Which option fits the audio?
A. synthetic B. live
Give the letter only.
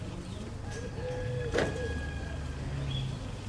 B